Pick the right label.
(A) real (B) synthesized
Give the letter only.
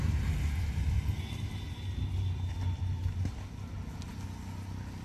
A